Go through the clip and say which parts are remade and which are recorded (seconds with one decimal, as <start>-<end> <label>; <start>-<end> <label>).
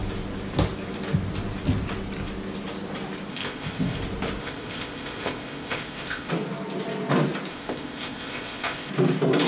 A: 0.0-3.3 recorded; 3.3-4.0 remade; 4.0-4.4 recorded; 4.4-6.3 remade; 6.3-7.5 recorded; 7.5-8.9 remade; 8.9-9.5 recorded